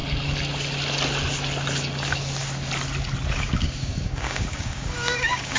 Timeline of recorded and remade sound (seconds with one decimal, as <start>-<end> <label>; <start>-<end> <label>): 0.0-3.4 recorded; 3.4-5.6 remade

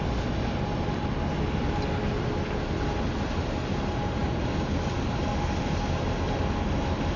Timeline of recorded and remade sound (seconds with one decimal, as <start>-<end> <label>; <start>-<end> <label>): 0.0-7.2 recorded